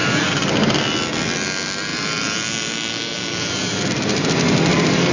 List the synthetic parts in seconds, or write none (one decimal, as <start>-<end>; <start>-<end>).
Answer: 0.0-0.5; 1.9-5.1